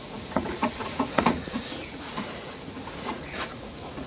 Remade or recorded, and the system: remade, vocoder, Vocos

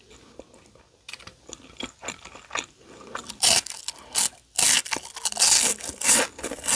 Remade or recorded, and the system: recorded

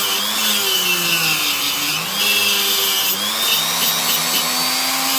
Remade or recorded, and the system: recorded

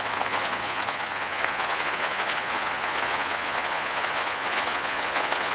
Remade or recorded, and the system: remade, vocoder, Vocos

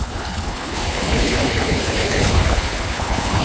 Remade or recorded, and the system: remade, codec, HILCodec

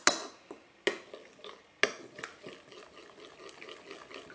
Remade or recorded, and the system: recorded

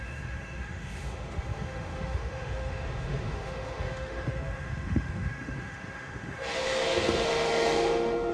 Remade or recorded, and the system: remade, autoencoder, DAC-VAE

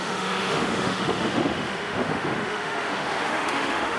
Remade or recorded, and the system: remade, autoencoder, DAC-VAE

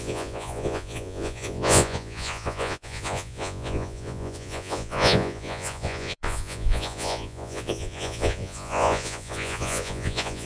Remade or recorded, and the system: remade, vocoder, Vocos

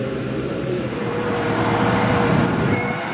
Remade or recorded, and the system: remade, vocoder, BigVGAN v2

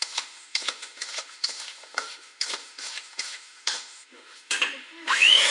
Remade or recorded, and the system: remade, autoencoder, DAC-VAE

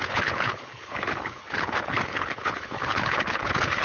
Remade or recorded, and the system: remade, codec, HILCodec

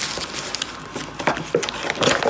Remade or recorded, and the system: recorded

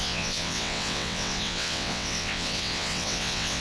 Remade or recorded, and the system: remade, vocoder, WaveNeXt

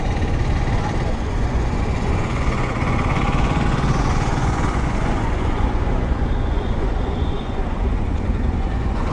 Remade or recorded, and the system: remade, vocoder, Vocos